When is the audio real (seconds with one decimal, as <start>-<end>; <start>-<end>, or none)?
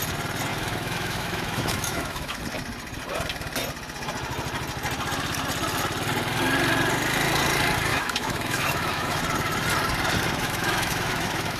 0.0-0.5; 2.4-7.9; 9.2-10.4